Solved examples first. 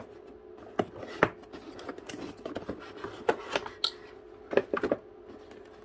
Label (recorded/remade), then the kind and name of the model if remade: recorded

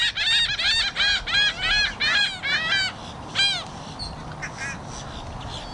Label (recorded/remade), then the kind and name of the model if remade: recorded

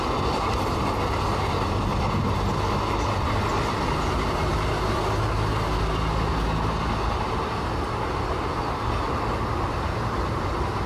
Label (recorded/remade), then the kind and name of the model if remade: recorded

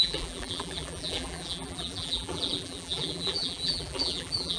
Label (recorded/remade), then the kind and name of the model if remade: remade, vocoder, BigVGAN v2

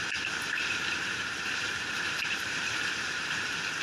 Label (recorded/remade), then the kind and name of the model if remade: remade, vocoder, BigVGAN v2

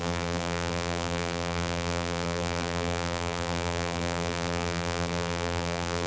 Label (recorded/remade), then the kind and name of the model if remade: remade, vocoder, BigVGAN v2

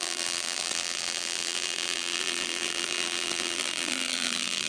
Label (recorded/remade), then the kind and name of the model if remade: remade, vocoder, BigVGAN v2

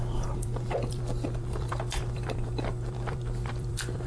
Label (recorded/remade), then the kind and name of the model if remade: remade, vocoder, BigVGAN v2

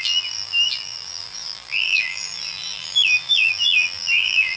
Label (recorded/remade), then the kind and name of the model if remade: remade, vocoder, BigVGAN v2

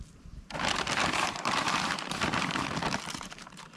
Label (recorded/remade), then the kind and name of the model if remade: remade, vocoder, BigVGAN v2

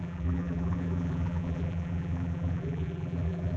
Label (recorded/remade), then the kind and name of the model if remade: remade, vocoder, BigVGAN v2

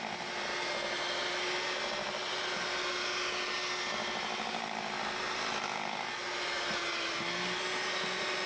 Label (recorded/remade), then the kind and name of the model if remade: recorded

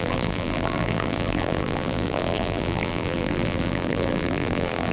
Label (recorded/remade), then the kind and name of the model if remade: remade, vocoder, BigVGAN v2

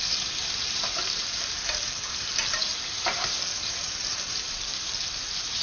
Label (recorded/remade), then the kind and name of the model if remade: remade, vocoder, BigVGAN v2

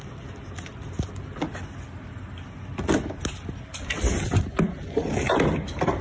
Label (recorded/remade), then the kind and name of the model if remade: recorded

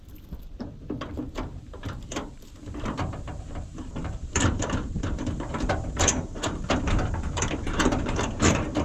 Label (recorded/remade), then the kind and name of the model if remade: remade, vocoder, BigVGAN v2